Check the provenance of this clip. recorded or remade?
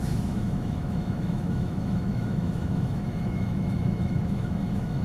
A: remade